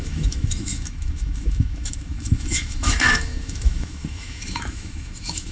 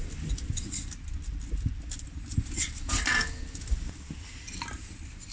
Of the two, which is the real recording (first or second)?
second